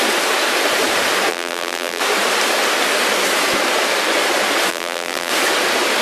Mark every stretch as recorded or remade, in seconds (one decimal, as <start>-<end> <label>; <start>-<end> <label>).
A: 0.0-1.3 recorded; 1.3-2.0 remade; 2.0-4.7 recorded; 4.7-5.3 remade; 5.3-6.0 recorded